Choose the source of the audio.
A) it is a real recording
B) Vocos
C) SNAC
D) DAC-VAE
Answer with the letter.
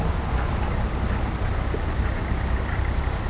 A